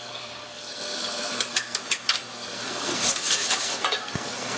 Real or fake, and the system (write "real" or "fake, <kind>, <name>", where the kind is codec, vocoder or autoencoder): fake, codec, SNAC